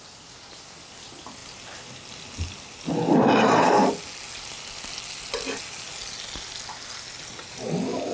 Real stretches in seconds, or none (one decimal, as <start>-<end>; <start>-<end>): 0.0-8.1